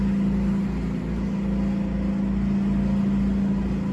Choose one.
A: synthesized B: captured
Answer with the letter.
B